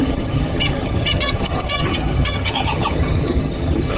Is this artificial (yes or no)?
yes